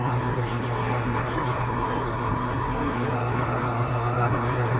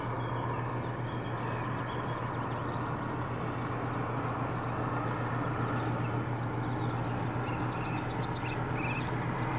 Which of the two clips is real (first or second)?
second